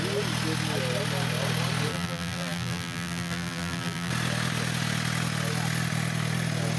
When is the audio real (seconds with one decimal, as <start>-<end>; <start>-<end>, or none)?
0.0-1.9; 4.1-6.8